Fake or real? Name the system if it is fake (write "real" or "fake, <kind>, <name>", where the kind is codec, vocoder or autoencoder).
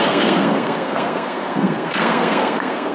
fake, codec, SNAC